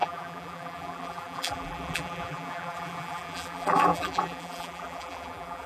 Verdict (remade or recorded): remade